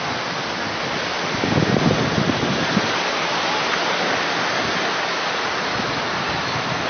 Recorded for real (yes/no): yes